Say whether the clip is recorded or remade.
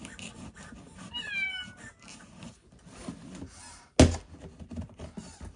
recorded